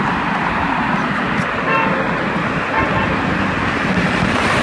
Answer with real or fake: real